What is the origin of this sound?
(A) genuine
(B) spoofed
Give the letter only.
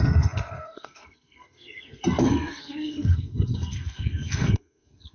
B